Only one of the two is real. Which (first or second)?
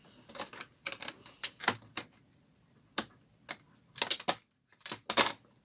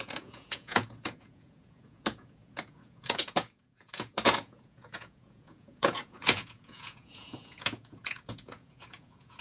first